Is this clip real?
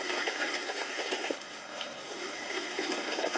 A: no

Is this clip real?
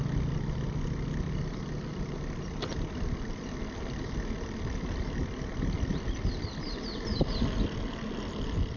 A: yes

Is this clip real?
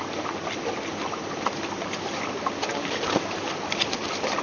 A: yes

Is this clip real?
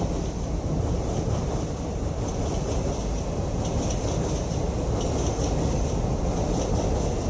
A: yes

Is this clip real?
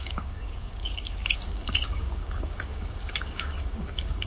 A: no